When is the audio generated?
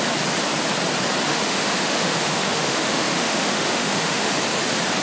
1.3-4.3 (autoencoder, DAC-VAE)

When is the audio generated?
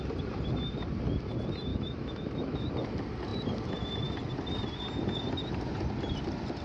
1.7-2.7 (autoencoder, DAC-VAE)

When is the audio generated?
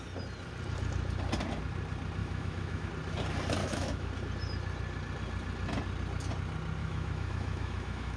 2.2-2.9 (autoencoder, DAC-VAE); 3.6-4.1; 6.8-8.2